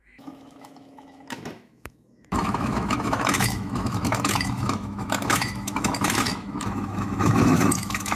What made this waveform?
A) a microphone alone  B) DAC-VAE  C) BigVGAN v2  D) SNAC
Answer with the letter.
B